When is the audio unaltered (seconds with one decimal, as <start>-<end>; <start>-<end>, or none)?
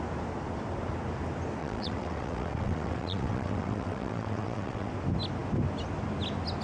0.0-1.6; 4.9-6.6